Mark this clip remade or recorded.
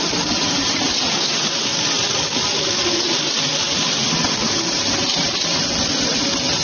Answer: recorded